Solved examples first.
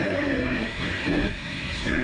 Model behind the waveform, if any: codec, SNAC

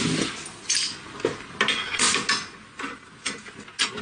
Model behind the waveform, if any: none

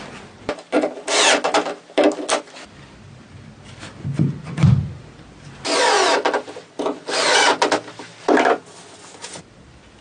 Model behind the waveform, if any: none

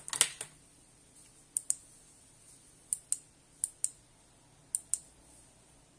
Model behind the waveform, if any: none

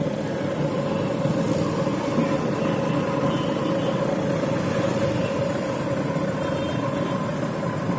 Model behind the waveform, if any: none